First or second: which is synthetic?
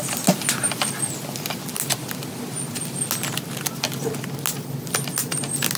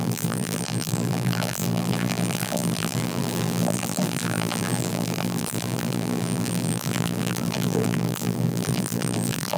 second